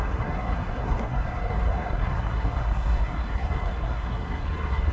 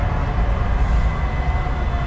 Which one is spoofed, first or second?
first